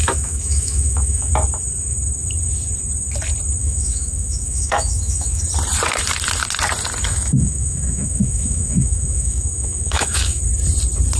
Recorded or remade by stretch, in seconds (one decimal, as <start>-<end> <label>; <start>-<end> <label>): 0.0-1.3 remade; 1.3-3.6 recorded; 3.6-5.4 remade; 5.4-7.1 recorded; 7.1-10.4 remade; 10.4-11.2 recorded